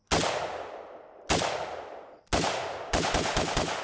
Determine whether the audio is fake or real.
real